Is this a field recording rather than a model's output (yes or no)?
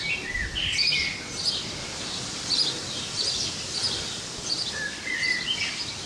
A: yes